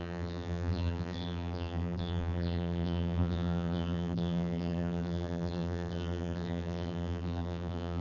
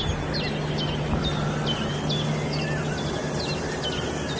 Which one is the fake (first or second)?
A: first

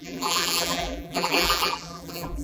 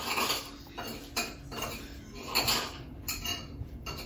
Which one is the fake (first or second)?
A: first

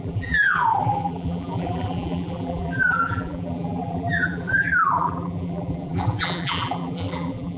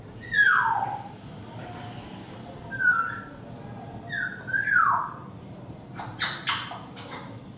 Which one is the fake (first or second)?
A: first